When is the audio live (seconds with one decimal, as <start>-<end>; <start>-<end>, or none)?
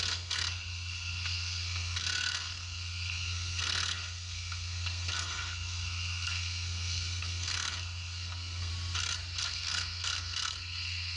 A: 8.7-9.4